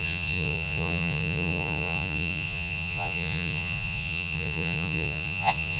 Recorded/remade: remade